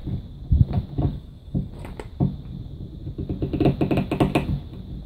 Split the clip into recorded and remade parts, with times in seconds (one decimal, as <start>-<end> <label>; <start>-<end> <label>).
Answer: 0.0-1.1 recorded; 1.1-1.7 remade; 1.7-5.1 recorded